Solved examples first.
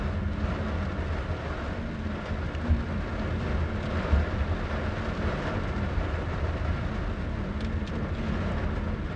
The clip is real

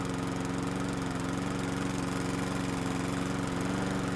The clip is real